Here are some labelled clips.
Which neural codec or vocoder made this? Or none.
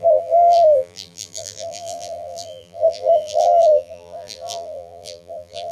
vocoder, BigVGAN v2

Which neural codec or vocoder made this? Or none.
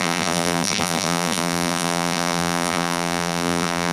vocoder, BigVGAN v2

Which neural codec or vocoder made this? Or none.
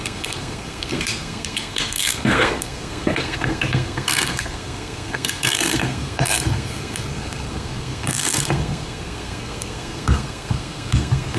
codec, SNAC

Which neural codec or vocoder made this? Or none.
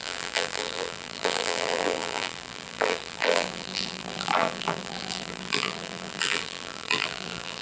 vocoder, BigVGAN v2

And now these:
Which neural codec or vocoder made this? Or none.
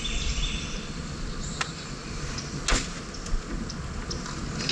none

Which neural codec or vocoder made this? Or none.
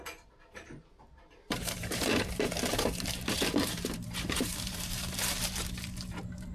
vocoder, BigVGAN v2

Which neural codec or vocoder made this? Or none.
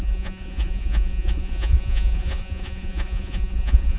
vocoder, Vocos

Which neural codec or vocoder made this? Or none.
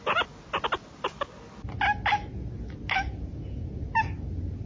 none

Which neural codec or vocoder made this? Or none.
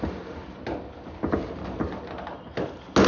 none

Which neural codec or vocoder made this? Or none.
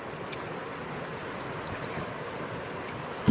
none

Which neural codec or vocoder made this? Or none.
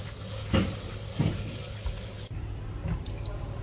none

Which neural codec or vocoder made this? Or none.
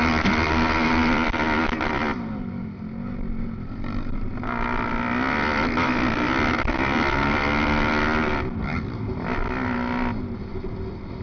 none